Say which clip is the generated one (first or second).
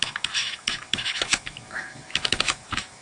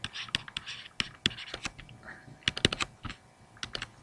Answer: first